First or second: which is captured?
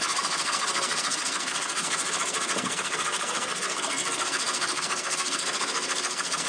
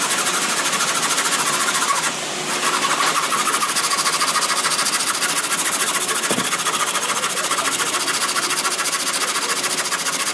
second